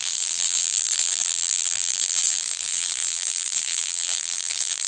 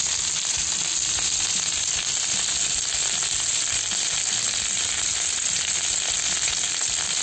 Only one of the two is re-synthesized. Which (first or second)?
first